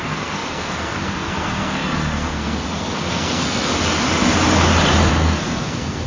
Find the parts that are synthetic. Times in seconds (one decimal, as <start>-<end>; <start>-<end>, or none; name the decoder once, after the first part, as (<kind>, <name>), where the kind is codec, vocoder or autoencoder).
0.0-3.7 (codec, SNAC); 5.1-6.1